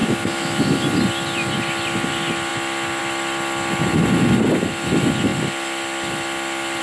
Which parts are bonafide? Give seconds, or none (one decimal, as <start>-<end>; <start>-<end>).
0.6-6.8